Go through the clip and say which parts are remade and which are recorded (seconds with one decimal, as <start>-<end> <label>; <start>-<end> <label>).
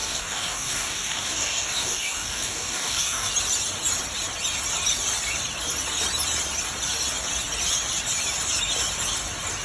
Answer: 0.0-3.3 remade; 3.3-9.6 recorded